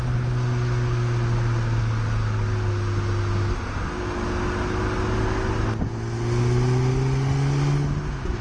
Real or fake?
real